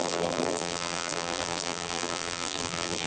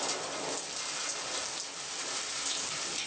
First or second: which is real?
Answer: second